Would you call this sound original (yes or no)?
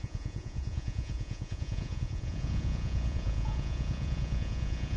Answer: no